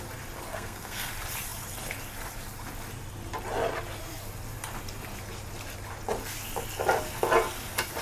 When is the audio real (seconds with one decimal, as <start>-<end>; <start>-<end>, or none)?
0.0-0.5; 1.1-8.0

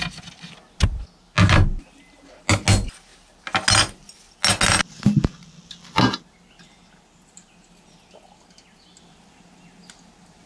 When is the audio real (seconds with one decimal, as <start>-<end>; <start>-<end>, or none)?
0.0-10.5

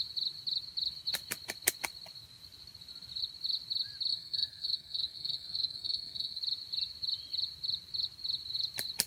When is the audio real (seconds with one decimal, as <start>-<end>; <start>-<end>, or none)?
0.0-4.1; 6.4-9.1